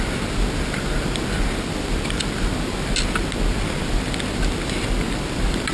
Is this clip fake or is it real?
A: real